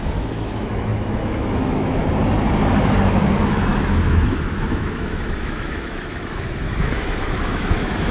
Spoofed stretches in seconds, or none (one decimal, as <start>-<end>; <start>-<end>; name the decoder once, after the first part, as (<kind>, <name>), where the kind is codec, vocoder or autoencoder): 0.0-2.0 (autoencoder, DAC-VAE); 3.1-8.1